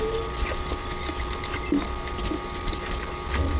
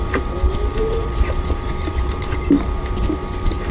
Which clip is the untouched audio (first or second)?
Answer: first